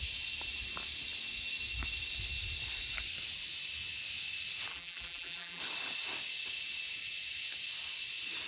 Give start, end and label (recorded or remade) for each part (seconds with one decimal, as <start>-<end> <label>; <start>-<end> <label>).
0.0-4.7 recorded; 4.7-5.6 remade; 5.6-8.5 recorded